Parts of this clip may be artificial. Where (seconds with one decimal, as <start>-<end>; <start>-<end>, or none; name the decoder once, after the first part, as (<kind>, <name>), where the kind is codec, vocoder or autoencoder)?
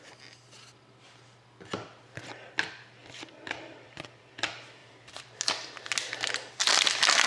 3.0-4.2 (vocoder, BigVGAN v2); 4.8-6.1; 6.6-7.3